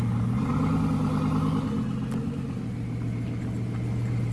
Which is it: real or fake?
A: real